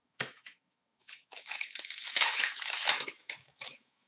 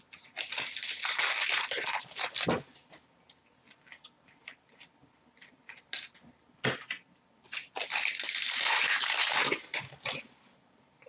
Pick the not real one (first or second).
first